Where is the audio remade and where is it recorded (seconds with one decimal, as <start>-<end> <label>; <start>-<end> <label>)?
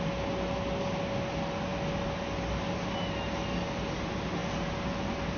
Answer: 0.0-5.4 recorded